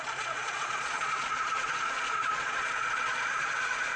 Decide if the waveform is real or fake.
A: fake